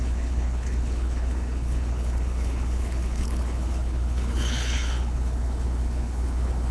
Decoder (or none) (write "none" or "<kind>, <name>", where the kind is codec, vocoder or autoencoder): codec, HILCodec